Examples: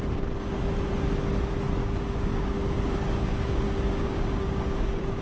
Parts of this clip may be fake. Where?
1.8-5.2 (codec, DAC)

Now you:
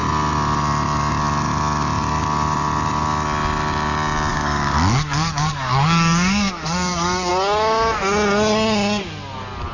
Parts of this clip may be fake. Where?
4.3-7.3 (codec, DAC)

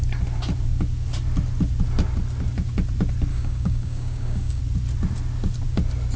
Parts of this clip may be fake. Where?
3.3-4.6 (codec, DAC)

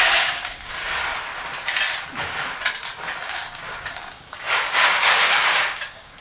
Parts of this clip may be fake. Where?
0.0-0.8 (codec, DAC); 3.2-6.2

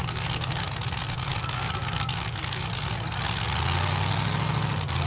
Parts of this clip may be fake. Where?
0.0-0.7 (codec, DAC); 1.3-2.7

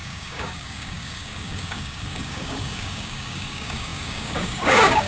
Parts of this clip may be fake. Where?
0.0-5.1 (codec, DAC)

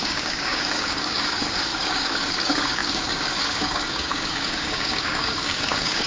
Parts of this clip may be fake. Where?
0.0-6.1 (codec, DAC)

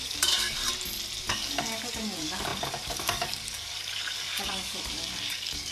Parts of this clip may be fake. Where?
0.0-0.6 (codec, DAC); 1.2-5.7